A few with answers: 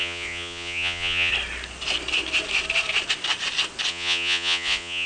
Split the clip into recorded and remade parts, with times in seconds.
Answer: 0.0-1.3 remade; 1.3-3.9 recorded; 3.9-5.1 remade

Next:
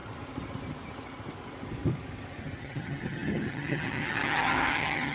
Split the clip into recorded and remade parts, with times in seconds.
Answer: 0.0-2.6 recorded; 2.6-5.1 remade

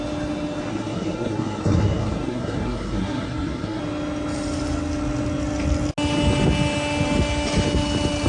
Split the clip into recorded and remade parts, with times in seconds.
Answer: 0.0-0.7 recorded; 0.7-3.8 remade; 3.8-8.3 recorded

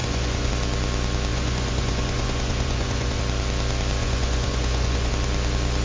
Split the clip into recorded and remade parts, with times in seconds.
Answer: 0.0-0.5 remade; 0.5-1.3 recorded; 1.3-3.2 remade; 3.2-4.0 recorded; 4.0-5.1 remade; 5.1-5.8 recorded

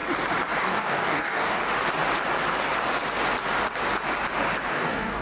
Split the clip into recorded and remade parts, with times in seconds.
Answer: 0.0-0.6 recorded; 0.6-1.6 remade; 1.6-4.7 recorded; 4.7-5.2 remade

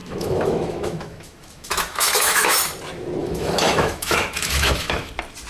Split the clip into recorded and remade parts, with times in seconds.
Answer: 0.0-2.6 remade; 2.6-3.2 recorded; 3.2-5.1 remade; 5.1-5.5 recorded

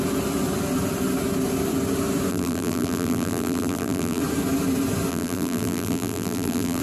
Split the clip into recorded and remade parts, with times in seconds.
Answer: 0.0-2.3 recorded; 2.3-4.2 remade; 4.2-5.1 recorded; 5.1-6.8 remade